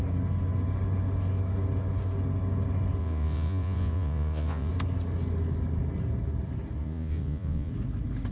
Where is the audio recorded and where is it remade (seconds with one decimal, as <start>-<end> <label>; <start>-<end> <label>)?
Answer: 0.0-3.0 recorded; 3.0-4.7 remade; 4.7-6.8 recorded; 6.8-7.7 remade; 7.7-8.3 recorded